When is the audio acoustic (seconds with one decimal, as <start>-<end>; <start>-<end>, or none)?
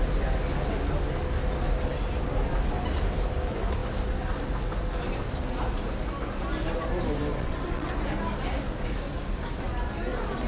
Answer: 0.0-7.3; 7.9-10.5